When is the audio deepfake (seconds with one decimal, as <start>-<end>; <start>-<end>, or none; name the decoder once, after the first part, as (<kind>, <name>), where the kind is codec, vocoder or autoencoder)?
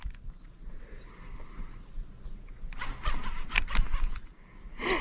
2.8-5.0 (vocoder, BigVGAN v2)